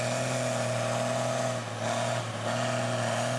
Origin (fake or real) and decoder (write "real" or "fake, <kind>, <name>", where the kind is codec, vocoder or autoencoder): real